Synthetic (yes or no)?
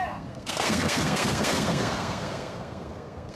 yes